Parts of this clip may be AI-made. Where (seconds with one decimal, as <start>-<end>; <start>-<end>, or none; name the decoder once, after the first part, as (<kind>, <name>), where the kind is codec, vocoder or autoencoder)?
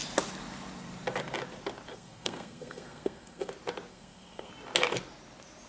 1.9-3.5 (codec, SNAC); 3.9-4.5